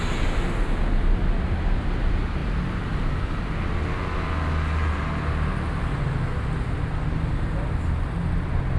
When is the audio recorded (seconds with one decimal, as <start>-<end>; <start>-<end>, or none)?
0.0-8.8